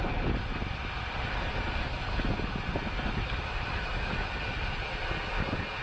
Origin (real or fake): real